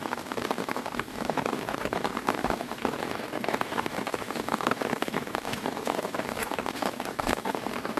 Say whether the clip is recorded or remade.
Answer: remade